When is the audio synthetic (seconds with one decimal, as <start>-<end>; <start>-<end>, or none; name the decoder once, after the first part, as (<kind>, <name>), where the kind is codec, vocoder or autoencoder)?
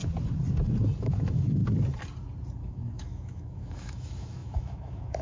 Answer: 1.0-1.6 (autoencoder, DAC-VAE); 2.6-5.2